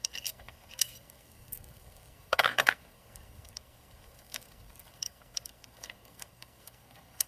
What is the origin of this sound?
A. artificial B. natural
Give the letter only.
A